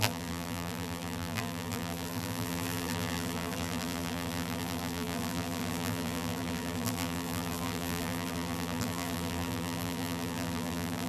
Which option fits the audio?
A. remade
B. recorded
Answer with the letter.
A